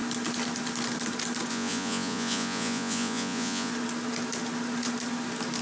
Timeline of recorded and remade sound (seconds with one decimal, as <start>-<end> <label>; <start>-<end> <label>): 0.0-1.5 recorded; 1.5-3.7 remade; 3.7-5.6 recorded